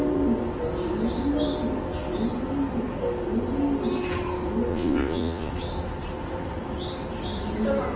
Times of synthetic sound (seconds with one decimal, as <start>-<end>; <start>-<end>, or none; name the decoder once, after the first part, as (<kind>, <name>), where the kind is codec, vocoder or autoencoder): 4.7-5.5 (vocoder, Vocos)